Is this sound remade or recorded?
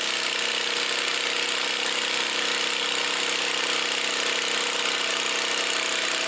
recorded